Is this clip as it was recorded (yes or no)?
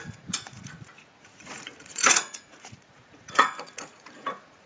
no